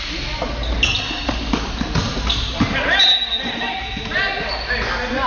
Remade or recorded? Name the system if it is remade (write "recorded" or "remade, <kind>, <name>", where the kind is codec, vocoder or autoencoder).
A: recorded